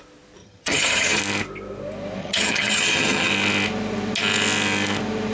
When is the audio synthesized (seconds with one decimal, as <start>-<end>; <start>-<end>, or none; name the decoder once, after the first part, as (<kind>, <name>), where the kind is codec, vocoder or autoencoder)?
0.4-1.2 (vocoder, HiFi-GAN); 2.2-3.3